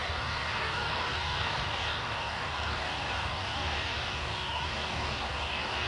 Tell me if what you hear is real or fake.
fake